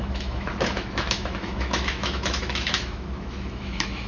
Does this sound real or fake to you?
fake